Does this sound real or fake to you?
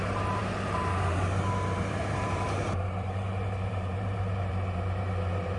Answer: fake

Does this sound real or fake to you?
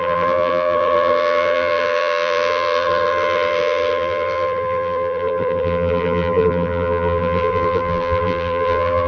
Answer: fake